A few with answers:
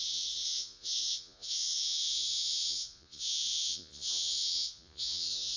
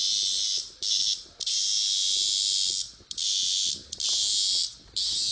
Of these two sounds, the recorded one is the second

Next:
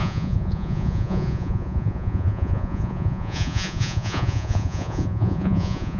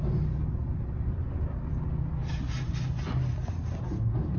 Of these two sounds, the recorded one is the second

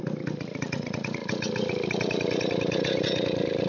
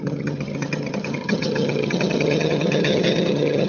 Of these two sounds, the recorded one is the first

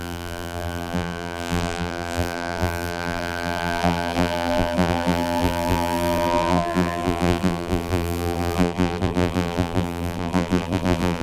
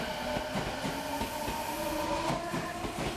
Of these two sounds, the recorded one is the second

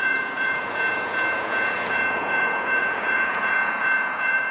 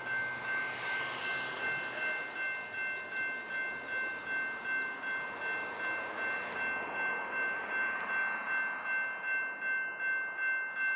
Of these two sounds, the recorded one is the second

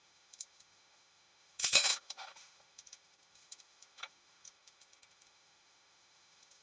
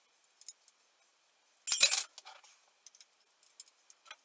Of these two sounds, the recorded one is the second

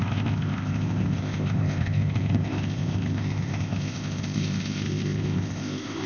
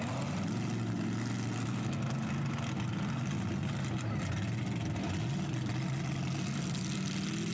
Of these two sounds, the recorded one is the second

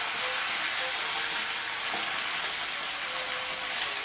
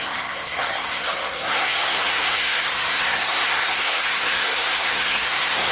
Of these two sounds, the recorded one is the first